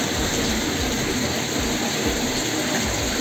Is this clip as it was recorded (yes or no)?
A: yes